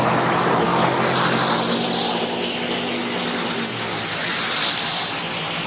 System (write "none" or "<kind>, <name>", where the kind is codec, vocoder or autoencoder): none